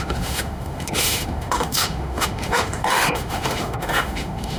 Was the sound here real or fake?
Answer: fake